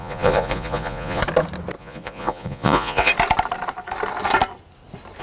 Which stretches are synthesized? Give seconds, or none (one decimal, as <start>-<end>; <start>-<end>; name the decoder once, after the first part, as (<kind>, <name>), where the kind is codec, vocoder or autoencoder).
0.0-1.2 (vocoder, Vocos); 1.8-3.1